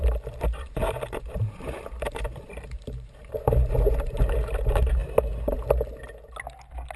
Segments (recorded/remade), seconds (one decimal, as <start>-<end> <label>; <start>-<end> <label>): 0.0-5.0 remade; 5.0-7.0 recorded